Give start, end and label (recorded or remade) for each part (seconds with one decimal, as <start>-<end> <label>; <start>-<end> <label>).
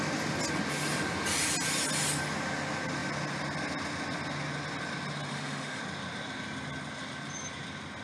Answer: 0.0-5.3 recorded; 5.3-5.8 remade; 5.8-8.0 recorded